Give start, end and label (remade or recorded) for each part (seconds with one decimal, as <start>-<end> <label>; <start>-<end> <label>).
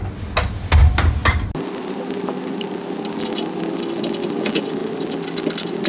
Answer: 0.0-5.9 recorded